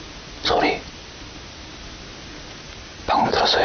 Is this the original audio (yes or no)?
yes